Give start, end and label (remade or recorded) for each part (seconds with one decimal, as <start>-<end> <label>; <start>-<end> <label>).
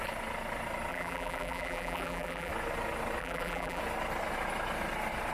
0.0-0.9 recorded; 0.9-2.5 remade; 2.5-3.2 recorded; 3.2-3.8 remade; 3.8-5.3 recorded